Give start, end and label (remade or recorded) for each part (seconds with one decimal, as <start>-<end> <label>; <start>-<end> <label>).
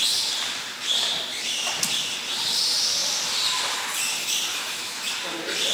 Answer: 0.0-4.5 recorded; 4.5-5.1 remade; 5.1-5.7 recorded